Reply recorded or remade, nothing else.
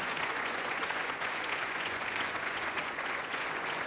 remade